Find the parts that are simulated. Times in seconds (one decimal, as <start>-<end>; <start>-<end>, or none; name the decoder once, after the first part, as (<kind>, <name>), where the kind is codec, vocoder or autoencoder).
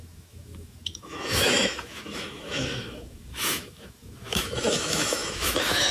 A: 0.0-5.9 (autoencoder, DAC-VAE)